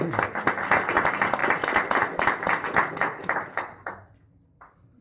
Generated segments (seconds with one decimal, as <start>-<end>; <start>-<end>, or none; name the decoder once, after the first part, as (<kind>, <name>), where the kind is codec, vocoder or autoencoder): none